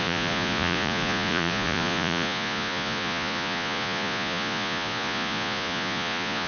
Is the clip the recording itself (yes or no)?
no